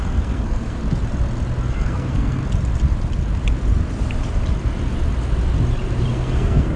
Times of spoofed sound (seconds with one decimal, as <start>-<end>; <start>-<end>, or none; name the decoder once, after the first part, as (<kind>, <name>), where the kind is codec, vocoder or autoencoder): 0.0-0.8 (codec, SNAC); 1.7-2.4; 6.1-6.8